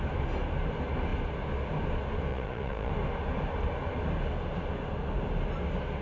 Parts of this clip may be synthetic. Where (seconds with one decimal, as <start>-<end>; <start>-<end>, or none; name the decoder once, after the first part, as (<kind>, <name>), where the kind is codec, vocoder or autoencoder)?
2.3-2.9 (vocoder, Vocos)